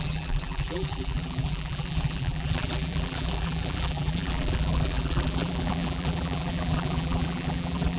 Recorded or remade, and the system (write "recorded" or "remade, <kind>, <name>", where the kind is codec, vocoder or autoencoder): remade, vocoder, BigVGAN v2